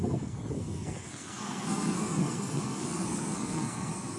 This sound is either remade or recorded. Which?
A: remade